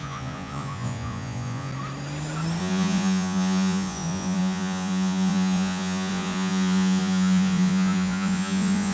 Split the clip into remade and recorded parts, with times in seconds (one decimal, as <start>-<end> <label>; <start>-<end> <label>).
0.0-1.7 remade; 1.7-2.6 recorded; 2.6-8.9 remade